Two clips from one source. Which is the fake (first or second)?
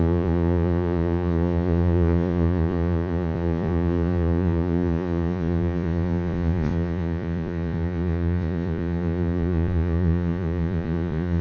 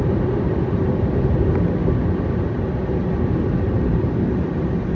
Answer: first